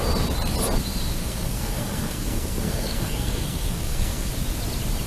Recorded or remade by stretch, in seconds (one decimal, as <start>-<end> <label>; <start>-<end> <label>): 0.0-1.2 recorded; 1.2-4.3 remade; 4.3-5.1 recorded

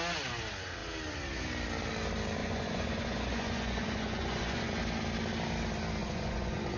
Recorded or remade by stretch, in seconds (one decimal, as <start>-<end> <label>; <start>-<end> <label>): 0.0-2.4 recorded; 2.4-4.7 remade; 4.7-6.0 recorded; 6.0-6.8 remade

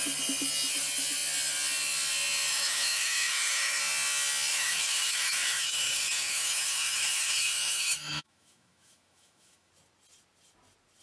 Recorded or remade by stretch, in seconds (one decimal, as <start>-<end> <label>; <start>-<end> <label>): 0.0-2.5 recorded; 2.5-3.8 remade; 3.8-4.5 recorded; 4.5-9.7 remade; 9.7-11.0 recorded

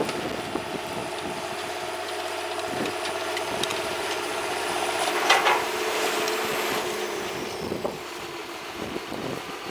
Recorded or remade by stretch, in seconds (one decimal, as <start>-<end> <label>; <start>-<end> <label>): 0.0-3.7 recorded; 3.7-6.1 remade; 6.1-8.4 recorded; 8.4-9.7 remade